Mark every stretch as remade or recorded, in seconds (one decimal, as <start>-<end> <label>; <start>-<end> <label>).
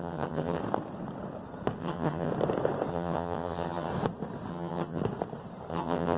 0.0-0.6 remade; 0.6-1.8 recorded; 1.8-2.3 remade; 2.3-2.9 recorded; 2.9-3.9 remade; 3.9-4.5 recorded; 4.5-5.0 remade; 5.0-5.7 recorded; 5.7-6.2 remade